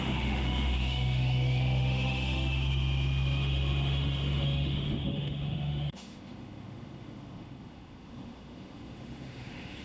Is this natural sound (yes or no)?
no